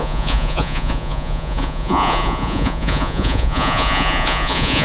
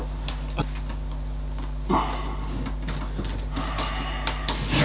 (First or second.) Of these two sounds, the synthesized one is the first